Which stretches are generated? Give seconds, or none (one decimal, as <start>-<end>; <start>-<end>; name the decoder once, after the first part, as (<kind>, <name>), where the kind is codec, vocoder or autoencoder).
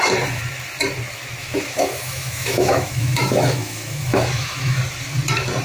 1.4-4.8 (autoencoder, DAC-VAE)